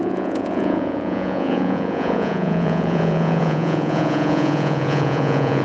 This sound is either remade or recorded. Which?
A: remade